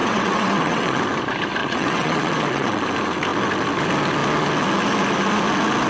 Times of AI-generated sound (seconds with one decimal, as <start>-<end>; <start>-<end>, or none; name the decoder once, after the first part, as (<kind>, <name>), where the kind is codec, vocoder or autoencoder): 0.0-1.0 (vocoder, WaveNeXt); 1.6-2.8